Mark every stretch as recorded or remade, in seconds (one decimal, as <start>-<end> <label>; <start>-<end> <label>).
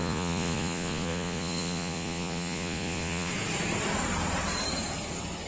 0.0-3.3 remade; 3.3-5.5 recorded